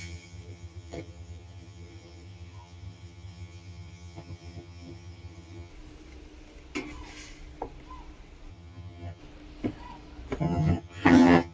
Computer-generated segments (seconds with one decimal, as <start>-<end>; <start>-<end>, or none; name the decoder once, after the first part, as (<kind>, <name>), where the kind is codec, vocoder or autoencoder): 0.0-5.7 (vocoder, HiFi-GAN); 8.5-9.2; 10.4-11.5